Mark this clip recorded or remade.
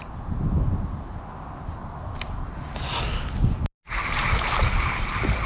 recorded